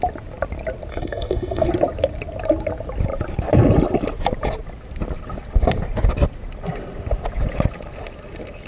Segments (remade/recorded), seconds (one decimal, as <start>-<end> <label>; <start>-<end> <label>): 0.0-0.9 recorded; 0.9-1.7 remade; 1.7-8.7 recorded